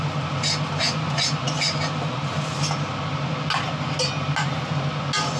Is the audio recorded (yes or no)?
yes